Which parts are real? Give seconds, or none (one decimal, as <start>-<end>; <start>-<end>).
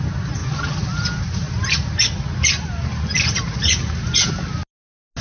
0.0-5.2